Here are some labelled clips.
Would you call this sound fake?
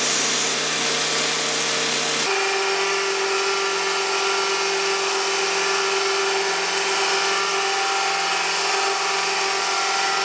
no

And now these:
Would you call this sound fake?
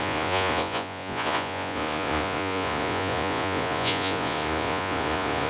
yes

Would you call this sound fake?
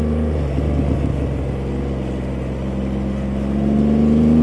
no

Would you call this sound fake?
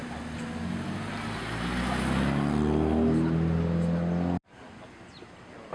no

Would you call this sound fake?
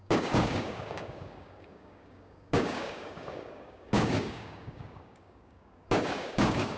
yes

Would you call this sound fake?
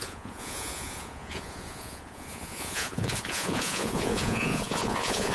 yes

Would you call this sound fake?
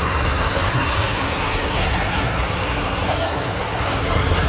yes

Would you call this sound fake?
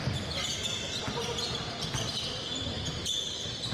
no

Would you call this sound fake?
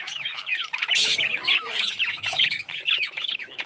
yes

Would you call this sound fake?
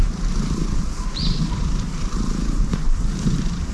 yes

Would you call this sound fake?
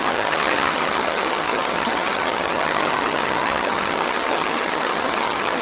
yes